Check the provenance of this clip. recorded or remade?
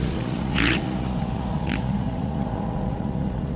remade